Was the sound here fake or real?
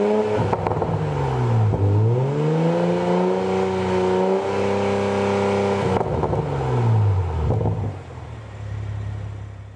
real